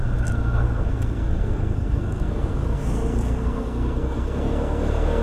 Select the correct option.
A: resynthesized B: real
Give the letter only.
A